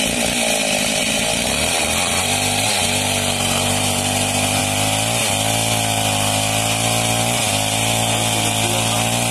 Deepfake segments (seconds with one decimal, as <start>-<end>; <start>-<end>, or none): 1.0-4.6